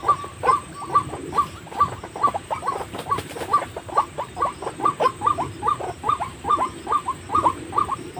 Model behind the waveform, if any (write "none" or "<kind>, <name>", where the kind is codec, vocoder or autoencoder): vocoder, BigVGAN v2